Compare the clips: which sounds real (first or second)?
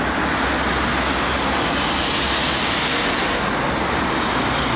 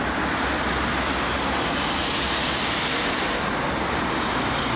first